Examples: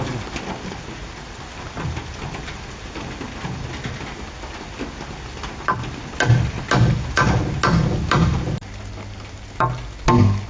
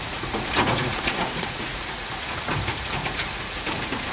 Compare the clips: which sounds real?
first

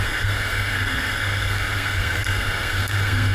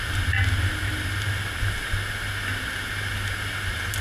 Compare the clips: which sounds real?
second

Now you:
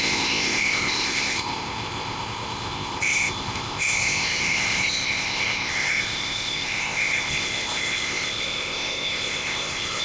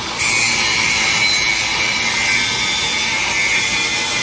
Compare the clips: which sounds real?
second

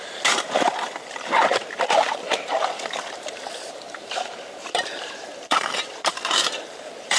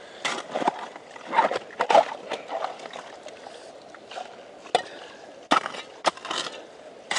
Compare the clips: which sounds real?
second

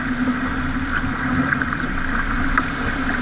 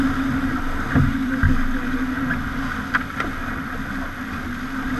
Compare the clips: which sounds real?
second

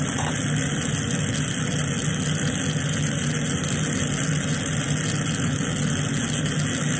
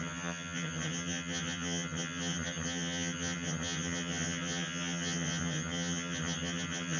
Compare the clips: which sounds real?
first